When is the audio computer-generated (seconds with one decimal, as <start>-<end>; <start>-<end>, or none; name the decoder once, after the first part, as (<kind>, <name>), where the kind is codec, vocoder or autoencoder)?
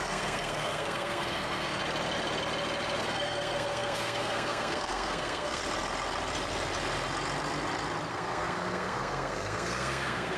0.0-1.8 (codec, SNAC); 3.0-5.6; 8.1-10.4